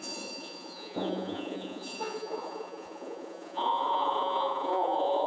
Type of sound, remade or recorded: remade